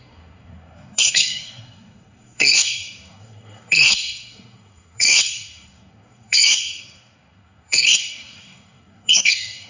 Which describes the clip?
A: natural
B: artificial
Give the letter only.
B